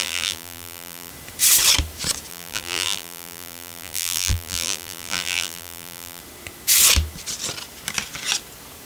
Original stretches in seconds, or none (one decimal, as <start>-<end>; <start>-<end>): 1.1-2.3; 6.2-8.9